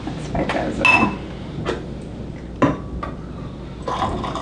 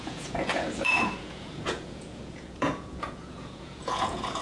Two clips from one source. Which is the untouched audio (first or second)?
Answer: first